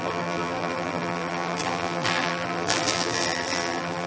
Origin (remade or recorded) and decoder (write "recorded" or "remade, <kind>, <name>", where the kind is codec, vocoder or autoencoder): remade, vocoder, BigVGAN v2